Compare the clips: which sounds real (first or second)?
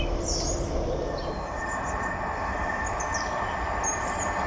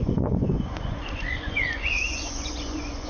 first